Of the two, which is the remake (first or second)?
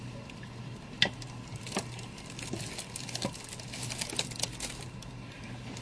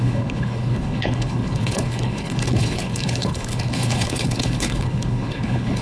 second